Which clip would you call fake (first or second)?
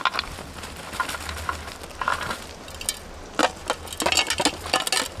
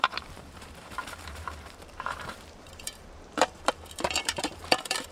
second